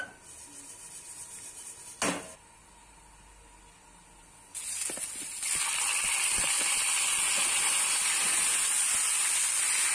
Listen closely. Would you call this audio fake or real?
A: real